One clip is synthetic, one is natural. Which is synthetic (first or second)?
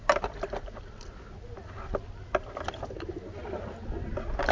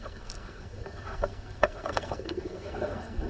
second